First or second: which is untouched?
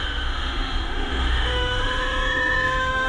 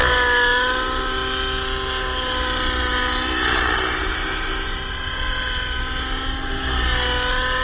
second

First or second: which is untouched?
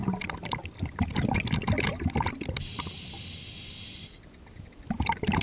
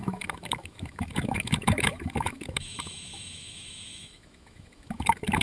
first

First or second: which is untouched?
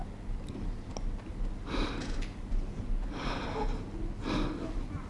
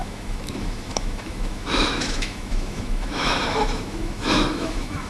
first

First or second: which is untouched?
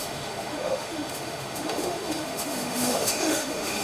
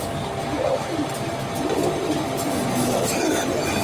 second